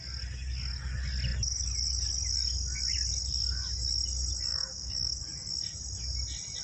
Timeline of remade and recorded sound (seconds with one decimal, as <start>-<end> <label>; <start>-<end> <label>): 0.0-4.5 recorded; 4.5-5.2 remade; 5.2-6.6 recorded